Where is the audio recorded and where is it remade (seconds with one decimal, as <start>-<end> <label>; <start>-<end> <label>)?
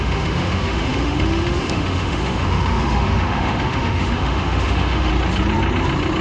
0.0-5.1 remade; 5.1-6.2 recorded